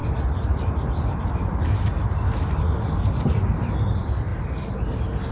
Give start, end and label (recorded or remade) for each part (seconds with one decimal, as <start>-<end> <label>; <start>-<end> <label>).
0.0-5.3 recorded